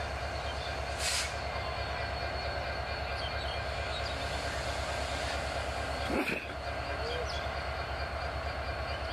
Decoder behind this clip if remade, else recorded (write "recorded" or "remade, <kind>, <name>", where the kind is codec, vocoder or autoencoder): recorded